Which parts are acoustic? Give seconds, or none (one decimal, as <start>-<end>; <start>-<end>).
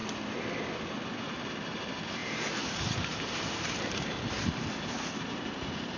0.0-1.1